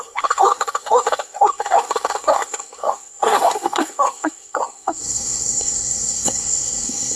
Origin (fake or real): fake